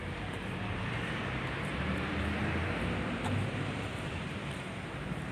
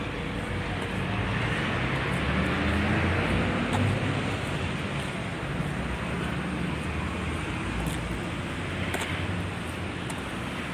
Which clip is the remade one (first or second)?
first